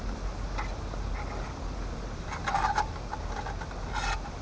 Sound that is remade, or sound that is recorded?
recorded